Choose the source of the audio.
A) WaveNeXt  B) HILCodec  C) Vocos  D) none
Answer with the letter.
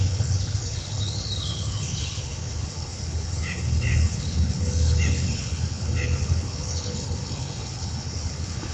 B